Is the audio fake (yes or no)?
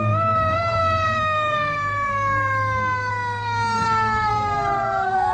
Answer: yes